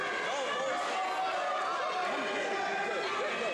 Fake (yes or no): no